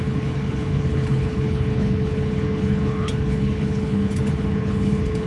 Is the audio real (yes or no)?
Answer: no